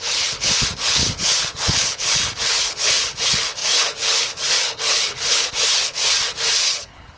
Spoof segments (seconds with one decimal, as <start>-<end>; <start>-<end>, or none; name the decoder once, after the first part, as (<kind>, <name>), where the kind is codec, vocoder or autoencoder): 0.0-6.0 (codec, HILCodec); 6.6-7.2